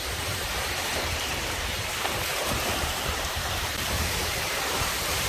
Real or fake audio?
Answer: fake